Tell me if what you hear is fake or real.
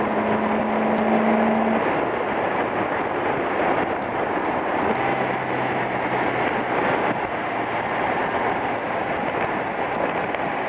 real